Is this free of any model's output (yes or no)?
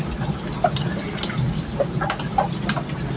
yes